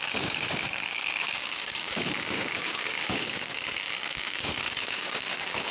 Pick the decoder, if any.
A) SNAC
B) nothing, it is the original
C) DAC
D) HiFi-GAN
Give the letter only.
C